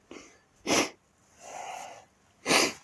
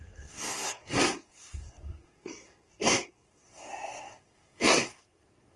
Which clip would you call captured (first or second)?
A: first